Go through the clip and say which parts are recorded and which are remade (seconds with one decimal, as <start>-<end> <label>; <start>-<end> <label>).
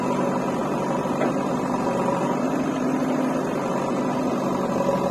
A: 0.0-0.6 recorded; 0.6-3.7 remade; 3.7-5.1 recorded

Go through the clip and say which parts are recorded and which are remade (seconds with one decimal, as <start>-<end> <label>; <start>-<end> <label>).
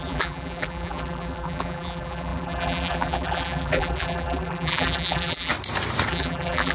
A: 0.0-5.5 remade; 5.5-6.1 recorded; 6.1-6.7 remade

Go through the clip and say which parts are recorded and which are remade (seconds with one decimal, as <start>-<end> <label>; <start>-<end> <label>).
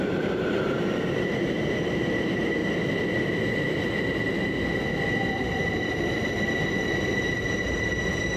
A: 0.0-2.6 remade; 2.6-5.3 recorded; 5.3-8.4 remade